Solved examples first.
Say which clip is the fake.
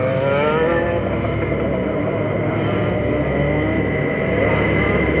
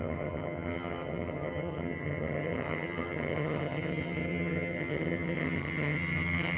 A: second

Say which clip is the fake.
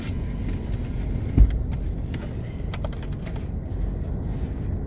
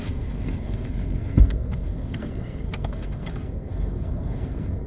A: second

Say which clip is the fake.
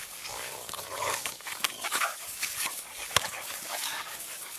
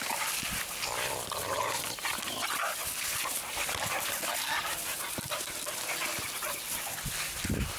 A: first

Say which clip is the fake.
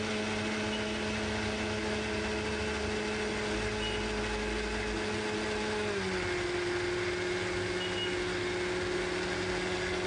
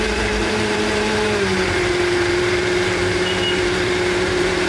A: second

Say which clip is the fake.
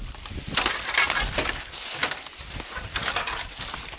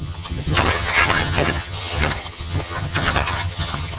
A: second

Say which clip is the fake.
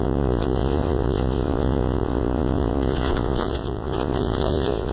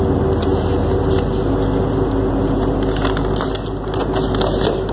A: first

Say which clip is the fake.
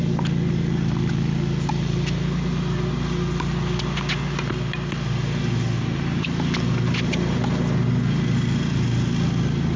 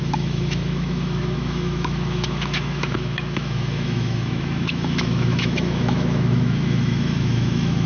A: second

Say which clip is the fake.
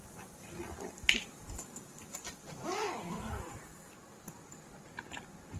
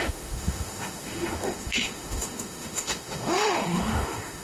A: second